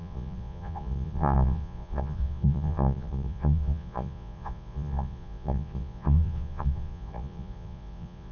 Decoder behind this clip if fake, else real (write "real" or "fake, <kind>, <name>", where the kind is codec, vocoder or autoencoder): fake, vocoder, Vocos